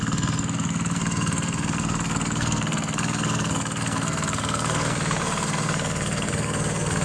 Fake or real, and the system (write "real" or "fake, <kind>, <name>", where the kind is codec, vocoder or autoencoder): fake, codec, SNAC